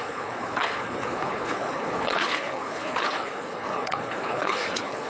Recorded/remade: remade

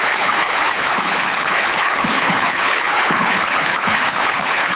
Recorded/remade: remade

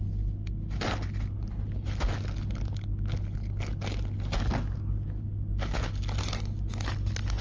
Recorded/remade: recorded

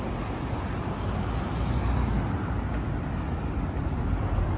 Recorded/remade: recorded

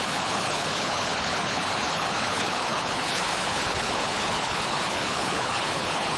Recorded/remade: remade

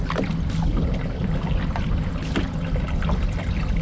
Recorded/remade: recorded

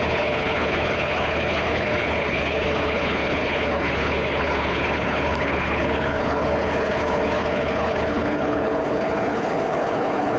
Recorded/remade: remade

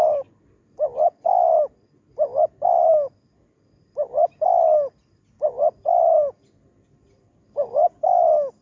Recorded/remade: recorded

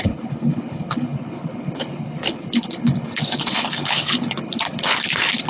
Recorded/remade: remade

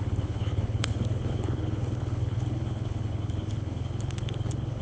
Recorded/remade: remade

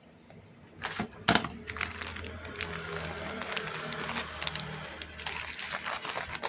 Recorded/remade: recorded